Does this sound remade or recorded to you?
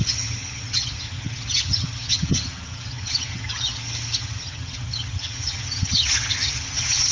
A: remade